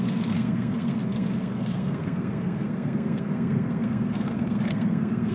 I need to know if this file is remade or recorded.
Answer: remade